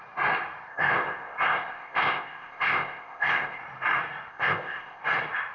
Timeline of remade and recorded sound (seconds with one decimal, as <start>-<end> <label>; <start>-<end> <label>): 0.0-0.7 recorded; 0.7-3.6 remade; 3.6-4.3 recorded; 4.3-5.0 remade; 5.0-5.5 recorded